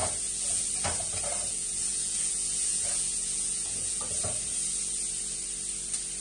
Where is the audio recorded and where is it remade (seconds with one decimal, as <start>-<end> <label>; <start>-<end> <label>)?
0.0-1.5 recorded; 1.5-4.0 remade; 4.0-6.2 recorded